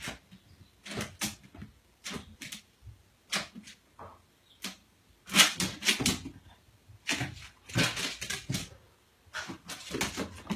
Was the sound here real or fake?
real